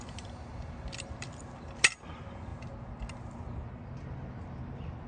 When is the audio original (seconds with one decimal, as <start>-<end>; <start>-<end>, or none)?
0.0-5.1